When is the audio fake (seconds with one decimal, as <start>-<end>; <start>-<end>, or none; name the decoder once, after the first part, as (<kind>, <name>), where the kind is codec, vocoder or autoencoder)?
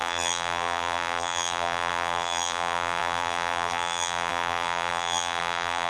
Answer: 0.0-5.9 (vocoder, BigVGAN v2)